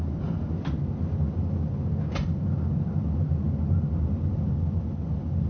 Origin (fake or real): real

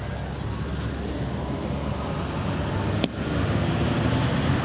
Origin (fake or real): real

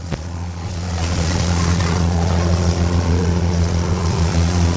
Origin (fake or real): fake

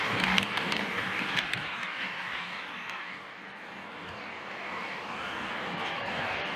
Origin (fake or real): fake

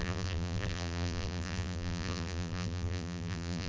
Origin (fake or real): fake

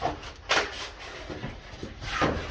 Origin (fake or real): real